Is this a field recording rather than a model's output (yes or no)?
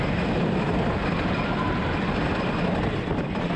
yes